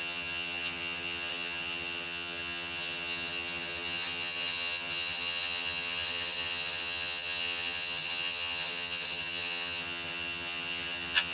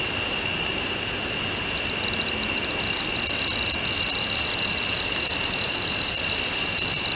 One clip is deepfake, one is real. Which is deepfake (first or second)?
first